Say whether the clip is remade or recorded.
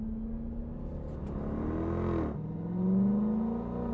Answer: recorded